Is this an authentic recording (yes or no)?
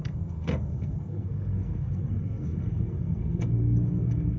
no